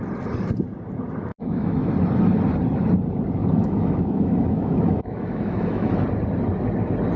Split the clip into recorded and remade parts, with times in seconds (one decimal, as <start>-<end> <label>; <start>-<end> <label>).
0.0-1.3 recorded; 1.3-1.9 remade; 1.9-3.4 recorded; 3.4-5.9 remade; 5.9-7.2 recorded